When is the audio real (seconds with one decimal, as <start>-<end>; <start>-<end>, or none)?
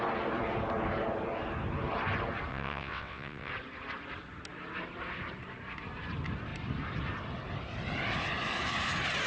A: 0.0-2.5; 3.5-9.3